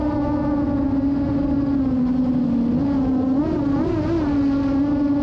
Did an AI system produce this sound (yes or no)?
no